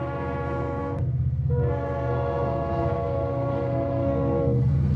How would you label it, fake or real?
fake